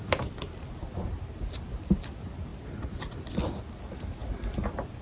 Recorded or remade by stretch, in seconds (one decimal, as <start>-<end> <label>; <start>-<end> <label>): 0.0-5.0 recorded